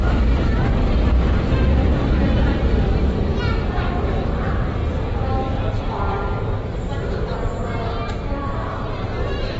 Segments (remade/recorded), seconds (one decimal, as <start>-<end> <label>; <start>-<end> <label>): 0.0-4.8 remade; 4.8-5.8 recorded; 5.8-9.6 remade